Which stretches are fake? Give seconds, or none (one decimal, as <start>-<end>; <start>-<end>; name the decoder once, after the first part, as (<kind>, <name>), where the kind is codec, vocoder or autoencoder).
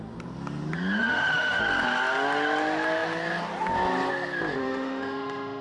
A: 1.0-1.6 (autoencoder, DAC-VAE); 4.6-5.6